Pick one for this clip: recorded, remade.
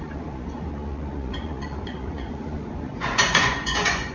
remade